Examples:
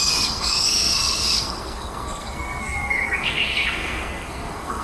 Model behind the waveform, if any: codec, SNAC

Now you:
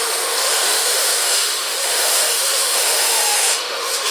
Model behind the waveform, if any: autoencoder, DAC-VAE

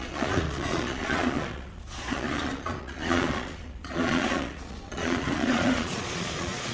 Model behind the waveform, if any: vocoder, Vocos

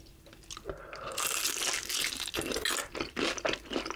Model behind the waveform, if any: none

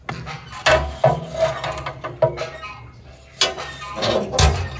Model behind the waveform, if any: none